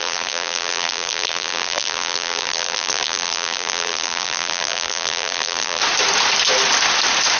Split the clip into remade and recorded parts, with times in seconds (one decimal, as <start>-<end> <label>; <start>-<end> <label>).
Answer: 0.0-5.8 remade; 5.8-7.4 recorded